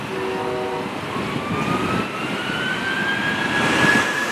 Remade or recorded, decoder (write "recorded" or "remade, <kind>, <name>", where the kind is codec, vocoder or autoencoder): recorded